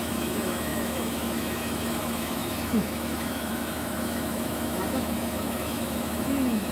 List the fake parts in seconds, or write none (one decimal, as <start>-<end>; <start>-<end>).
0.0-6.7